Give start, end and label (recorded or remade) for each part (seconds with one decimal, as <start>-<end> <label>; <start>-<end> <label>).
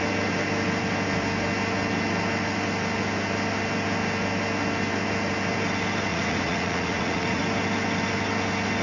0.0-6.1 recorded; 6.1-7.4 remade; 7.4-8.8 recorded